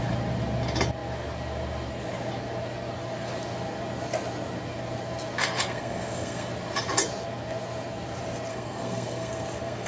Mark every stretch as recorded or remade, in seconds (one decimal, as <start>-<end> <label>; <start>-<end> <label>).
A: 0.0-5.4 recorded; 5.4-6.5 remade; 6.5-8.5 recorded; 8.5-9.9 remade